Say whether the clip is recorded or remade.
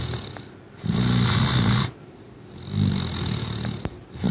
recorded